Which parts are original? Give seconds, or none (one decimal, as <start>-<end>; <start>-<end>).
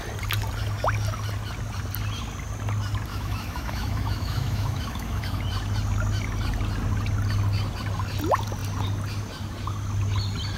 0.0-3.1; 5.4-10.6